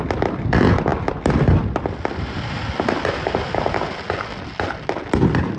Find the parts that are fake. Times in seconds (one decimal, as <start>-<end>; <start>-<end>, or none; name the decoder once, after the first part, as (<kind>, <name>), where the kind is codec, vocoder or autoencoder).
none